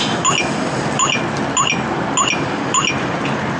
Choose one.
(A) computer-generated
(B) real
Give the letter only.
B